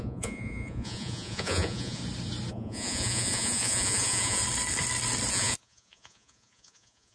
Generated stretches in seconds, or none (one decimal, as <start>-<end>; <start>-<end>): 0.0-2.0; 2.5-4.4; 5.3-7.1